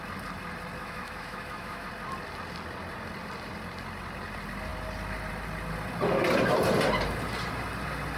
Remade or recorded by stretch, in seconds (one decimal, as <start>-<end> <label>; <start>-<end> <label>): 0.0-0.8 recorded; 0.8-1.9 remade; 1.9-8.2 recorded